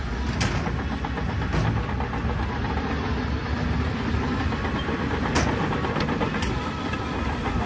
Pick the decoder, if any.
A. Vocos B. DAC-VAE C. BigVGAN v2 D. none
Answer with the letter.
D